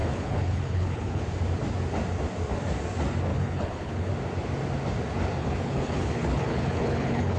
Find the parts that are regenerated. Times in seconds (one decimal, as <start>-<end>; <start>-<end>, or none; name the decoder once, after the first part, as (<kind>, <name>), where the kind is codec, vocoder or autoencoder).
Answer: 0.0-1.2 (codec, HILCodec); 3.3-4.1; 5.4-7.4